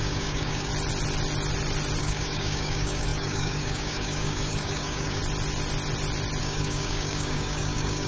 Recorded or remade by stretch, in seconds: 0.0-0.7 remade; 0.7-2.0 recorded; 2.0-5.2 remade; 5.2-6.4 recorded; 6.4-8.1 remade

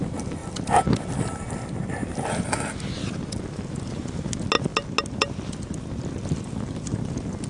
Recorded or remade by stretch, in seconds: 0.0-7.5 recorded

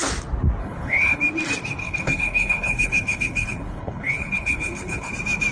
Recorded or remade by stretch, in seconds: 0.0-0.6 recorded; 0.6-1.2 remade; 1.2-1.8 recorded; 1.8-5.1 remade; 5.1-5.5 recorded

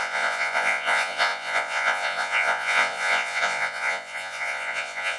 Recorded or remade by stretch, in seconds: 0.0-5.2 remade

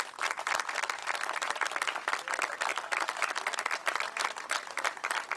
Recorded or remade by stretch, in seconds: 0.0-1.0 recorded; 1.0-1.5 remade; 1.5-2.7 recorded; 2.7-3.3 remade; 3.3-5.4 recorded

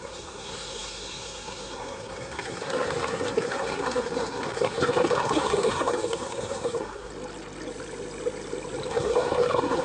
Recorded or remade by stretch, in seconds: 0.0-7.1 remade; 7.1-8.9 recorded; 8.9-9.8 remade